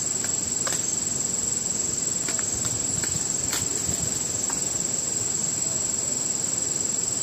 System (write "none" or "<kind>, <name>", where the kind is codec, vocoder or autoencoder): none